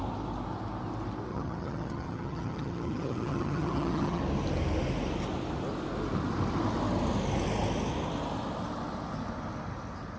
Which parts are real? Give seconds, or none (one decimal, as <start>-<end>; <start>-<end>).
0.0-1.3; 4.2-10.2